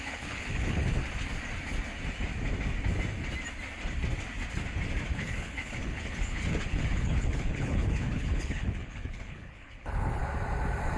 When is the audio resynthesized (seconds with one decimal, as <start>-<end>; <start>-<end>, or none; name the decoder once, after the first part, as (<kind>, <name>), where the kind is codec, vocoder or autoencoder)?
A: 0.0-1.0 (codec, HILCodec); 5.1-10.2